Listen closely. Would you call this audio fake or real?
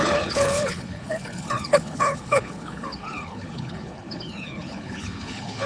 fake